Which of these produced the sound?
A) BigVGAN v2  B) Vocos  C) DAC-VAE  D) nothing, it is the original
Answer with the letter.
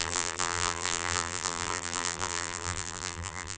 A